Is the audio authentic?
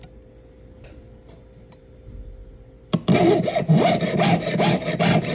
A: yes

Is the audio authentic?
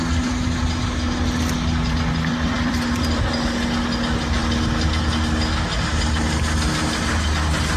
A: yes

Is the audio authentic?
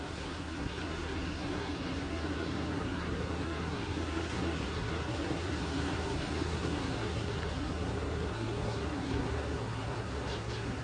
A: no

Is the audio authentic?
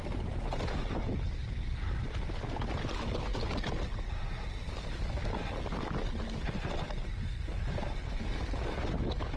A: yes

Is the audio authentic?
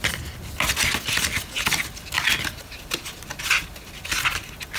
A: yes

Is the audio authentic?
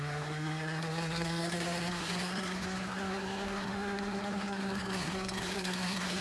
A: no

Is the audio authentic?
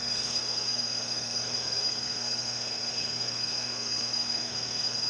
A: no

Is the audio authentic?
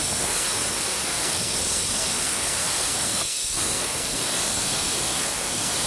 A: no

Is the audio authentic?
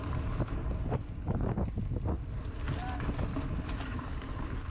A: yes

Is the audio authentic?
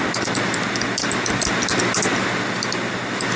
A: yes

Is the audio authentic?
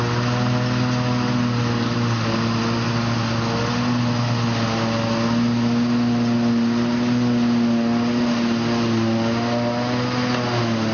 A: yes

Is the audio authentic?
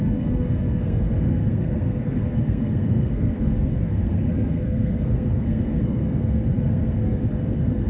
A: no